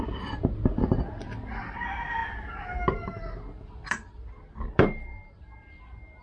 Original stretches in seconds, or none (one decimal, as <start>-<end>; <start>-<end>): 0.0-6.2